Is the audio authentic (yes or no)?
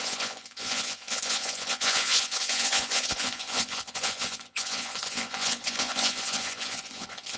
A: no